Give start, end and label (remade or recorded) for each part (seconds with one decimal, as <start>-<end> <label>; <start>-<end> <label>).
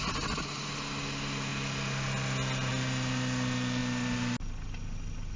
0.0-5.4 recorded